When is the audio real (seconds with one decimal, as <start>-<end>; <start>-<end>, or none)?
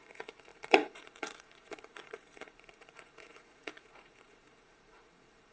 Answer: none